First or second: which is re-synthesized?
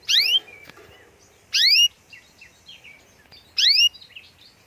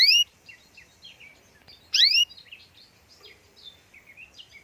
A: second